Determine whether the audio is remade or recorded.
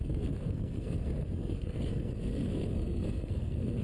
remade